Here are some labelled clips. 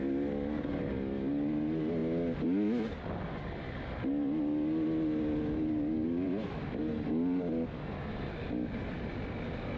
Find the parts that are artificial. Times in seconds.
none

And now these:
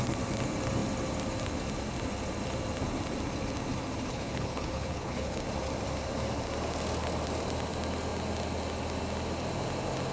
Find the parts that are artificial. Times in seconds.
4.1-5.4 (codec, HILCodec)

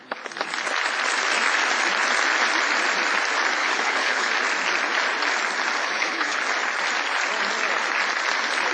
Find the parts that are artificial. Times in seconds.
3.6-4.3 (codec, HILCodec); 5.8-6.4